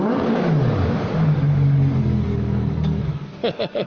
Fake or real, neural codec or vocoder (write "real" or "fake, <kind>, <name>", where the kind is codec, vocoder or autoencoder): fake, codec, DAC